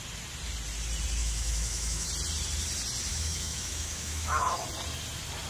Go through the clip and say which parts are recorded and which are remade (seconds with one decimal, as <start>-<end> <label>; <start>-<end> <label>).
0.0-1.2 recorded; 1.2-2.1 remade; 2.1-3.1 recorded; 3.1-4.6 remade; 4.6-5.5 recorded